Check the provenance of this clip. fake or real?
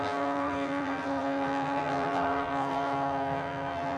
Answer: fake